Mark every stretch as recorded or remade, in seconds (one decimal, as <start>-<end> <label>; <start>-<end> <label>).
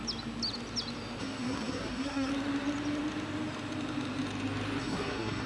0.0-1.2 recorded; 1.2-2.3 remade; 2.3-4.8 recorded; 4.8-5.5 remade